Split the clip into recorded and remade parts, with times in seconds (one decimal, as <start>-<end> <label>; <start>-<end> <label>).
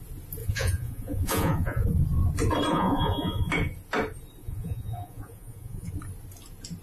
0.0-0.4 recorded; 0.4-2.0 remade; 2.0-2.7 recorded; 2.7-3.5 remade; 3.5-4.4 recorded; 4.4-5.9 remade; 5.9-6.8 recorded